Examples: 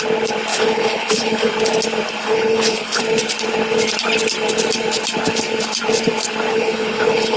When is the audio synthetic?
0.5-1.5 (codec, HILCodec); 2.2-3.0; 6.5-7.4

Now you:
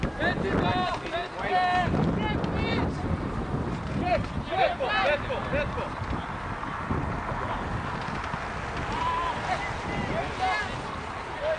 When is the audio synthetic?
none